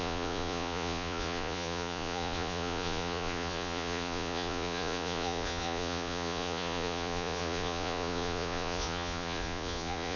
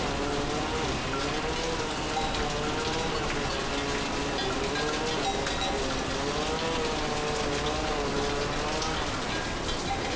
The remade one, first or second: first